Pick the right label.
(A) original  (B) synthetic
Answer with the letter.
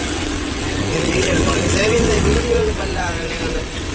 B